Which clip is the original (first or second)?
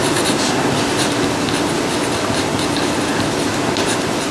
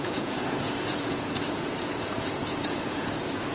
first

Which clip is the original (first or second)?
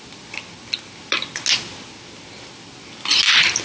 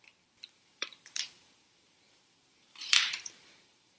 first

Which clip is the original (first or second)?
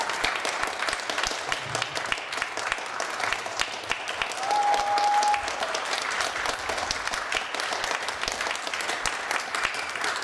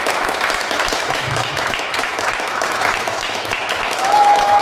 first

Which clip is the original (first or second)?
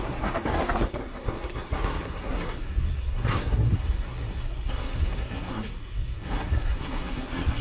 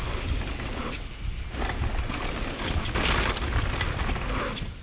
second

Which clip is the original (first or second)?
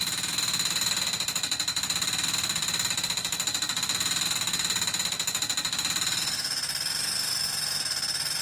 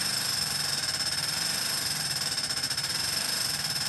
first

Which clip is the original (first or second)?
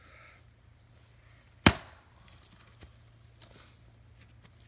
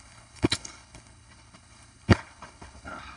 first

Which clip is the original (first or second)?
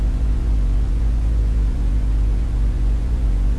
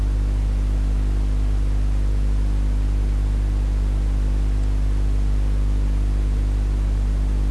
second